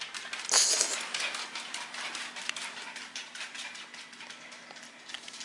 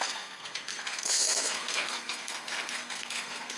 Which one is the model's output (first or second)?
second